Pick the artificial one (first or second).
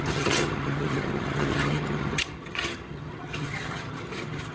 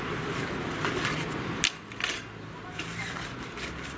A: first